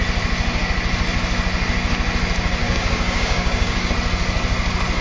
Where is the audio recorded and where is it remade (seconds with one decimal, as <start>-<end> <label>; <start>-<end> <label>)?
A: 0.0-2.6 recorded; 2.6-3.9 remade; 3.9-5.0 recorded